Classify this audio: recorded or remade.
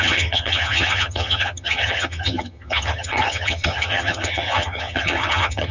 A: remade